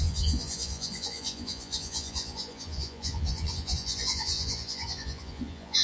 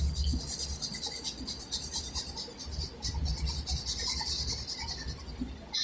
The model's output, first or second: first